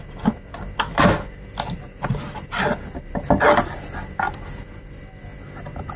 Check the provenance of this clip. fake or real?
real